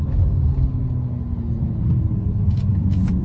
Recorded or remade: recorded